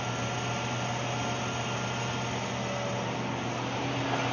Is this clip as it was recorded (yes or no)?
yes